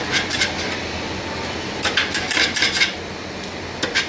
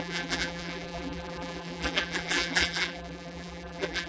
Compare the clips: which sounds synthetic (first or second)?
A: second